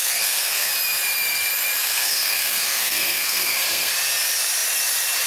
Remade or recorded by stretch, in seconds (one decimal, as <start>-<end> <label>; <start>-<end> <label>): 0.0-0.7 remade; 0.7-1.8 recorded; 1.8-3.9 remade; 3.9-5.3 recorded